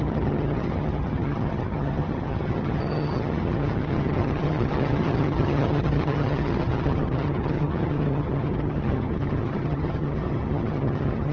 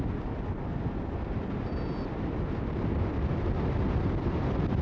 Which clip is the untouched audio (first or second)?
second